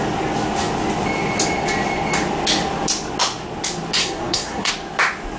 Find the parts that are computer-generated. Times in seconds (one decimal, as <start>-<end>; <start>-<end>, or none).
4.0-4.7